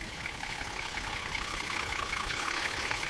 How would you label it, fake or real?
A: fake